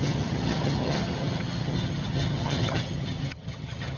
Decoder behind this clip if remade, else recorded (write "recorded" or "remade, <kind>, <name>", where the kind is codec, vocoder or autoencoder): remade, vocoder, HiFi-GAN